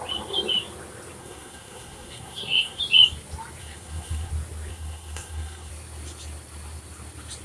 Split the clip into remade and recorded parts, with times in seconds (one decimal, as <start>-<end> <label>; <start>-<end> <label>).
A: 0.0-1.2 recorded; 1.2-2.8 remade; 2.8-3.6 recorded; 3.6-4.3 remade; 4.3-4.7 recorded; 4.7-5.7 remade; 5.7-7.4 recorded